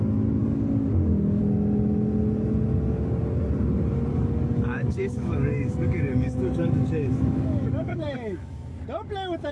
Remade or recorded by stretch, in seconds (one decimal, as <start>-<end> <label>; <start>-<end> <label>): 0.0-0.4 recorded; 0.4-1.4 remade; 1.4-4.1 recorded; 4.1-8.7 remade; 8.7-9.5 recorded